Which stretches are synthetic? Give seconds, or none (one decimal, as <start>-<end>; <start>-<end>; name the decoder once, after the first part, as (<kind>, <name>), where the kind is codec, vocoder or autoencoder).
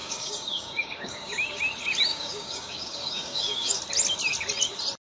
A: 0.0-1.6 (codec, DAC); 2.1-3.8